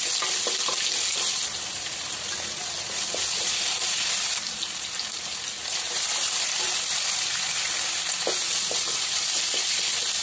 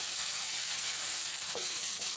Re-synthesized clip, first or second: second